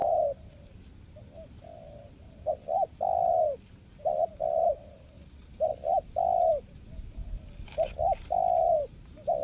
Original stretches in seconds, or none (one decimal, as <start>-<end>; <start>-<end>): 1.2-4.3; 4.8-5.7; 6.4-9.4